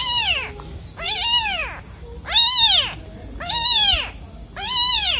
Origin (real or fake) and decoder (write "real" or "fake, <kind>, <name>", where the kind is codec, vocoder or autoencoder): real